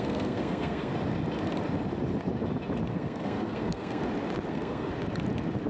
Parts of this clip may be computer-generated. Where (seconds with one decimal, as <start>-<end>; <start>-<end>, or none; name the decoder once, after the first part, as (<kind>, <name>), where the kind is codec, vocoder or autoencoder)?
0.0-0.9 (codec, SNAC); 2.9-4.0; 4.5-4.9